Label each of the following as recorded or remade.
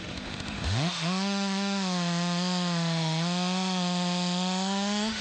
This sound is remade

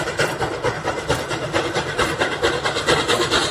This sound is recorded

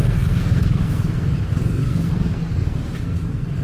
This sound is remade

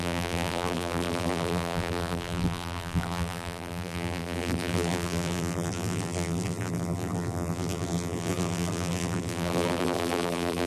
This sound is remade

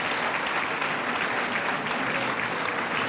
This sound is recorded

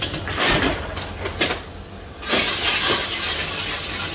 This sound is recorded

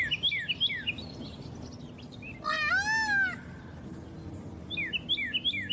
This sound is recorded